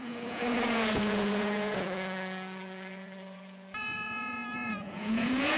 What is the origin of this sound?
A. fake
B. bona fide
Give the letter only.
A